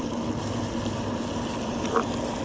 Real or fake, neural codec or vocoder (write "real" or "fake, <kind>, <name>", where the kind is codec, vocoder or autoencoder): real